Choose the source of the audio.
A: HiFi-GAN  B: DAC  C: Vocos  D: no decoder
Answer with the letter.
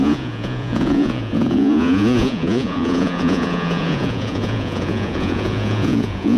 C